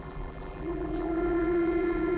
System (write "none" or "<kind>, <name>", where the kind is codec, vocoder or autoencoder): vocoder, BigVGAN v2